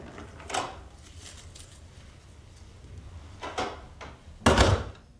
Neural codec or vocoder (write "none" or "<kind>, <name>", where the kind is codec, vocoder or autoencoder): none